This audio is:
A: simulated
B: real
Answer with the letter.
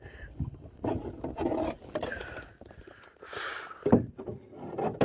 B